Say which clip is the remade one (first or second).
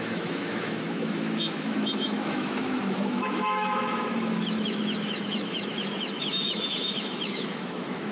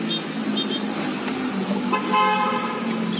first